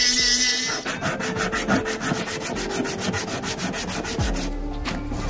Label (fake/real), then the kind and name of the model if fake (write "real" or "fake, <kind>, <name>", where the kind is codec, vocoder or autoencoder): real